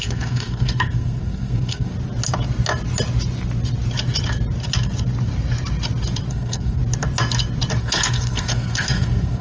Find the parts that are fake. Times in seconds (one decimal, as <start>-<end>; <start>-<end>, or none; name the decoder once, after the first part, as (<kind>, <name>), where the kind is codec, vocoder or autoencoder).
0.0-1.9 (codec, SNAC); 6.3-6.8; 7.8-9.4